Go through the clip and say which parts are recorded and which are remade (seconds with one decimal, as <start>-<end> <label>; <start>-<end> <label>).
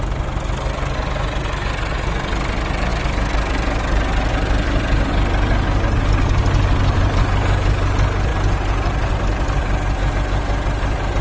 0.0-11.2 recorded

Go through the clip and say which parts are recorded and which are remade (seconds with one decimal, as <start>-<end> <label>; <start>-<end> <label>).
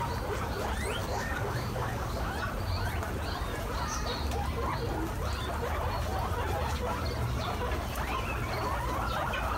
0.0-1.0 recorded; 1.0-2.3 remade; 2.3-9.6 recorded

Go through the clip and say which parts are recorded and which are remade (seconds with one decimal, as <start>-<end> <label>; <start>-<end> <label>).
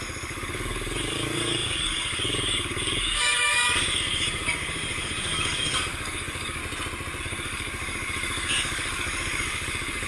0.0-6.6 remade; 6.6-7.2 recorded; 7.2-10.1 remade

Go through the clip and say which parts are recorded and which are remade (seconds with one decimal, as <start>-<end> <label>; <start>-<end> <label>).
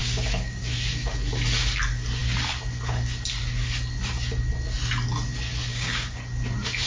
0.0-0.6 remade; 0.6-5.7 recorded; 5.7-6.2 remade; 6.2-6.9 recorded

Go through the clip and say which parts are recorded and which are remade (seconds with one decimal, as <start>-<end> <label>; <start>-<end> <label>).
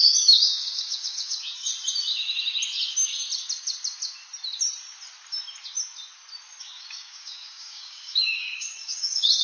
0.0-1.7 remade; 1.7-6.6 recorded; 6.6-9.4 remade